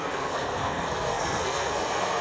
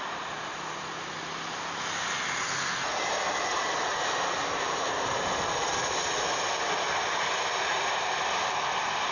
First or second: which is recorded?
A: second